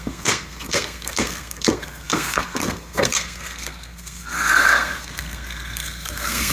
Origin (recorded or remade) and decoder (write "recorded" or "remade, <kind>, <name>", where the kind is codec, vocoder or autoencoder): remade, codec, SNAC